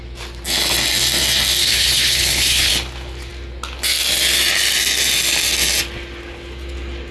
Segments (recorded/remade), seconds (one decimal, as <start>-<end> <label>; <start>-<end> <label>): 0.0-1.6 recorded; 1.6-2.7 remade; 2.7-7.1 recorded